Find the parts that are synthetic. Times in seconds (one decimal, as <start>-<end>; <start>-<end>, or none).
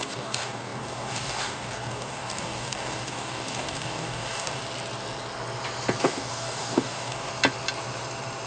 0.0-4.6; 6.0-7.3